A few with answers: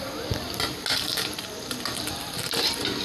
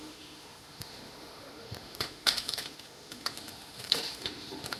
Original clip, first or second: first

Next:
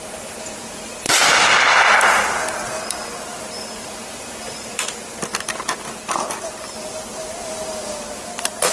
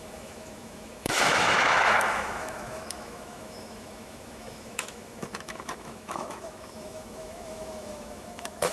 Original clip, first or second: first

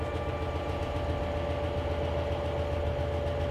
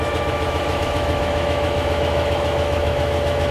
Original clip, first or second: first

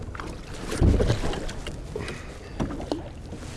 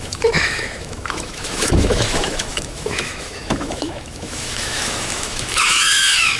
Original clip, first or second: first